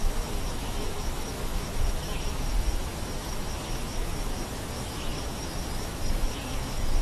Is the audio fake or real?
fake